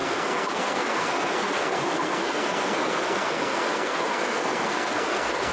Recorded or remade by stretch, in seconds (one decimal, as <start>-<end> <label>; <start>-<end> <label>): 0.0-5.5 remade